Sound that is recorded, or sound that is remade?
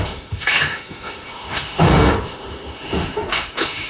remade